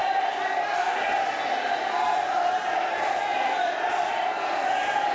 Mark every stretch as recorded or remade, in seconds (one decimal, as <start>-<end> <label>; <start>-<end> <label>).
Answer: 0.0-3.3 recorded; 3.3-4.0 remade; 4.0-5.1 recorded